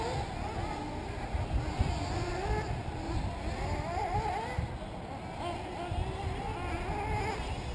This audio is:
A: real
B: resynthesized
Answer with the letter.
A